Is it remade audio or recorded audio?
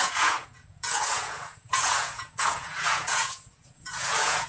remade